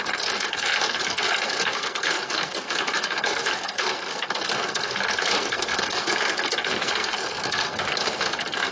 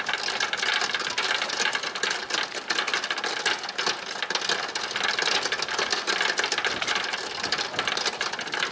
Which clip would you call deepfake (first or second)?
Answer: first